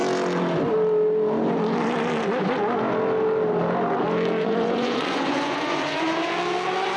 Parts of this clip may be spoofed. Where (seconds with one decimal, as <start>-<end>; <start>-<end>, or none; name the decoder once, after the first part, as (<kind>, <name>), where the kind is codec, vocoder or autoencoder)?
4.4-6.3 (vocoder, Vocos)